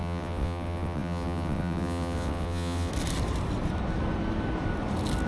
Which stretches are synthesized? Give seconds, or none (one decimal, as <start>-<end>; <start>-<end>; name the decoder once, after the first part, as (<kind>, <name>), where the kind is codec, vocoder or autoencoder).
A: 0.0-2.9 (vocoder, WaveNeXt)